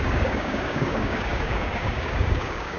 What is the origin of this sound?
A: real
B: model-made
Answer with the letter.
B